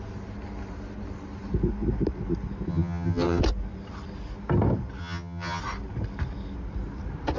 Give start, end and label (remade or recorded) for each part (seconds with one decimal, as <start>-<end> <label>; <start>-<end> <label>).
0.0-2.7 recorded; 2.7-3.4 remade; 3.4-5.0 recorded; 5.0-5.6 remade; 5.6-7.4 recorded